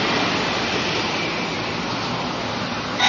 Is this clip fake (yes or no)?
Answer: yes